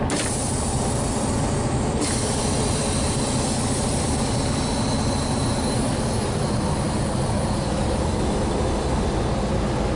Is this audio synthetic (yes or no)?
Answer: no